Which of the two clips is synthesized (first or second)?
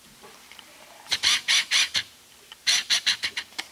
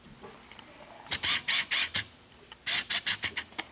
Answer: first